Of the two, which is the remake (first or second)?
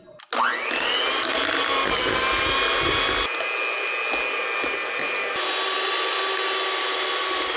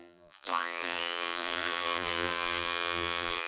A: second